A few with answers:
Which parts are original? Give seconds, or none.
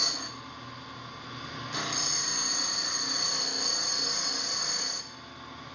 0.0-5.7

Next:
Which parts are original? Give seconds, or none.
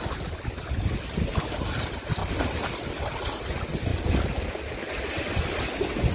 0.0-6.1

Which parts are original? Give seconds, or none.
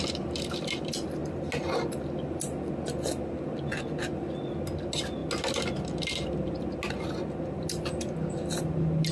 0.0-9.1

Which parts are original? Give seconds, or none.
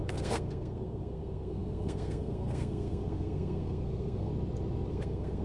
4.3-4.9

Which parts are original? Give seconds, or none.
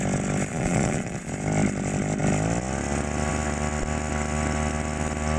0.0-0.5; 1.3-5.4